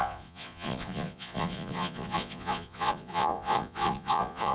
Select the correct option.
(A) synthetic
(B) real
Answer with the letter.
A